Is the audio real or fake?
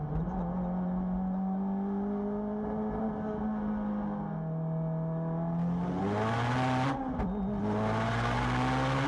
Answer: real